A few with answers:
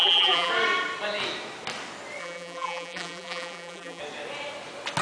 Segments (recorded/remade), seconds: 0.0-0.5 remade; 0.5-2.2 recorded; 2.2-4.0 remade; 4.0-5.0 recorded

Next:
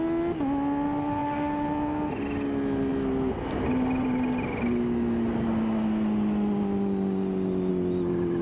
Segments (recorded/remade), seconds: 0.0-8.4 recorded

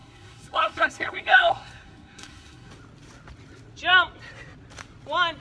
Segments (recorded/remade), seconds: 0.0-2.7 remade; 2.7-5.4 recorded

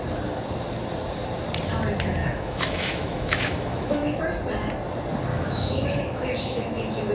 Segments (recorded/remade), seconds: 0.0-2.2 recorded; 2.2-4.2 remade; 4.2-5.3 recorded; 5.3-7.1 remade

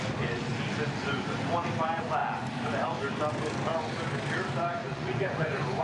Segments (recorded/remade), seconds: 0.0-4.8 recorded; 4.8-5.8 remade

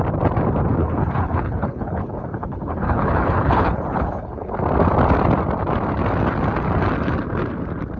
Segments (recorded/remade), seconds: 0.0-0.8 recorded; 0.8-4.5 remade; 4.5-8.0 recorded